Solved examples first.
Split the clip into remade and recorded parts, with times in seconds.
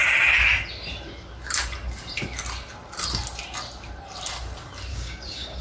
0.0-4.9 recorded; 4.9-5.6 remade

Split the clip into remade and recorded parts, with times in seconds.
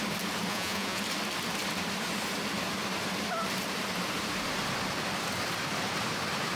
0.0-0.5 recorded; 0.5-1.0 remade; 1.0-6.6 recorded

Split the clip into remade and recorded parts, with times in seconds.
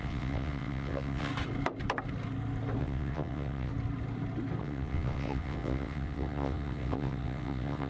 0.0-1.3 remade; 1.3-2.8 recorded; 2.8-3.7 remade; 3.7-4.6 recorded; 4.6-7.9 remade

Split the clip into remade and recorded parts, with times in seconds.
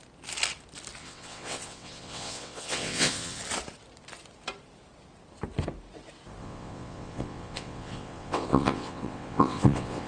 0.0-1.0 recorded; 1.0-3.4 remade; 3.4-6.4 recorded; 6.4-10.1 remade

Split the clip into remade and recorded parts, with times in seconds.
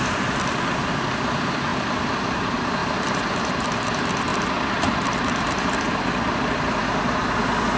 0.0-4.3 remade; 4.3-4.8 recorded; 4.8-6.8 remade; 6.8-7.8 recorded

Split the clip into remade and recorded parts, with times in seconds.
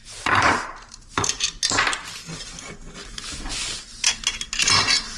0.0-1.4 remade; 1.4-5.2 recorded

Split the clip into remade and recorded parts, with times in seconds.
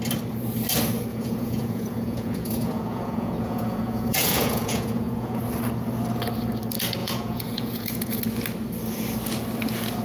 0.0-1.1 recorded; 1.1-5.4 remade; 5.4-7.0 recorded; 7.0-8.2 remade; 8.2-10.0 recorded